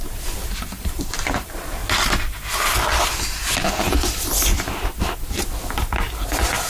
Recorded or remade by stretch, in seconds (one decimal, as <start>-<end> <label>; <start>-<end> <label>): 0.0-1.8 remade; 1.8-5.7 recorded; 5.7-6.7 remade